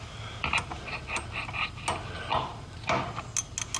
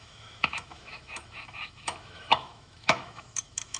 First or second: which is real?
first